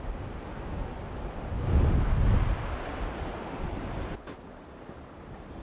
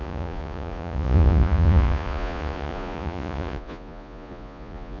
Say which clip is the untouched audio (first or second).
first